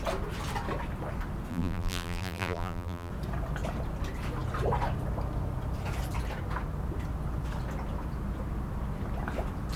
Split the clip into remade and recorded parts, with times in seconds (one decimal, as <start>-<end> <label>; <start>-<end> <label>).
0.0-1.5 recorded; 1.5-3.1 remade; 3.1-9.8 recorded